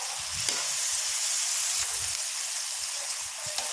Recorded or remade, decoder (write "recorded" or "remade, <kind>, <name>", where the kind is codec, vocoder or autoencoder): recorded